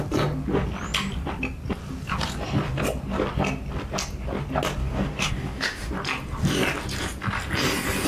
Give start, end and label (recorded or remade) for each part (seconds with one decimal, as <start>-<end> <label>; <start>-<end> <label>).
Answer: 0.0-4.8 recorded; 4.8-5.9 remade; 5.9-8.1 recorded